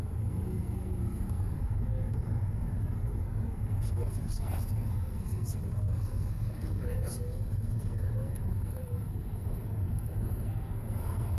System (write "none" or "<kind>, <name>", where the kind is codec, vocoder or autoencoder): codec, SNAC